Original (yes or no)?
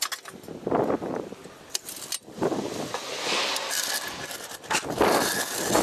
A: yes